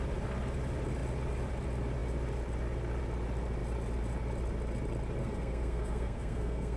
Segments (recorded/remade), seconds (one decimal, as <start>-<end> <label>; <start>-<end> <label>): 0.0-5.2 recorded; 5.2-6.8 remade